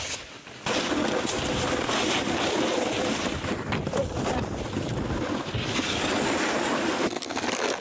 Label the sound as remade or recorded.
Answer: recorded